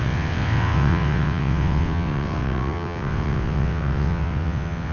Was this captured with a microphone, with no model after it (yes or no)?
no